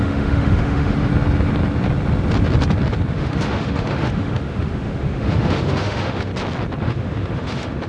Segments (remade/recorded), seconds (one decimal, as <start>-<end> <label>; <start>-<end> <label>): 0.0-1.1 remade; 1.1-3.1 recorded; 3.1-6.3 remade; 6.3-6.8 recorded; 6.8-7.9 remade